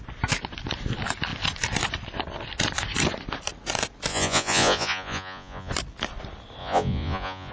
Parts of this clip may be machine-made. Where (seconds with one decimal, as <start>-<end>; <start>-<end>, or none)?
4.1-5.7; 6.6-7.5